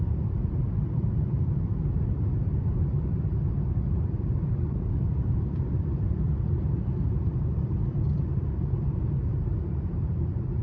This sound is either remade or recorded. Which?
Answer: remade